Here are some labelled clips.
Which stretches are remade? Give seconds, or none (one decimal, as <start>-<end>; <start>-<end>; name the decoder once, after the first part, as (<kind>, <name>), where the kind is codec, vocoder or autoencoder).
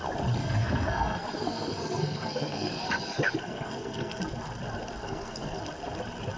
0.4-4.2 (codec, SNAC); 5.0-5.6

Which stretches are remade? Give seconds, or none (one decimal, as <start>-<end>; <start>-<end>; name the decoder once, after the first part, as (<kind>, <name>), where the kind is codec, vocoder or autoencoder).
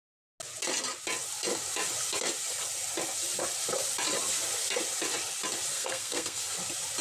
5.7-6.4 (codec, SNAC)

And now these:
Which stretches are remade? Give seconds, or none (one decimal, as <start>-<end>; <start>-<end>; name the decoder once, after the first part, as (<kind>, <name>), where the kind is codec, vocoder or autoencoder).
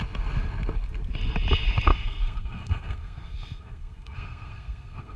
1.9-5.2 (codec, SNAC)